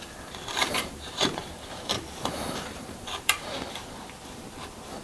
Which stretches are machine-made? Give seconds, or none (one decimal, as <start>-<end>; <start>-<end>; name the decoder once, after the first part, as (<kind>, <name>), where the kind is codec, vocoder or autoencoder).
0.5-3.5 (vocoder, BigVGAN v2)